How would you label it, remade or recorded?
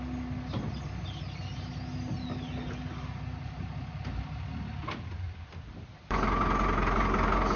recorded